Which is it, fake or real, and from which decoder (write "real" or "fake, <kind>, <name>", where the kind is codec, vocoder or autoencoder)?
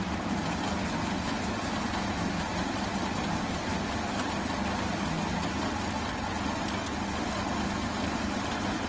real